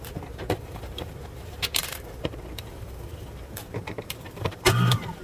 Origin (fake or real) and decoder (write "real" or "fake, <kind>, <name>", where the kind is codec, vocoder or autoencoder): fake, vocoder, BigVGAN v2